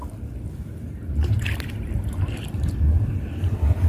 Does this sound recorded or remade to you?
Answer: remade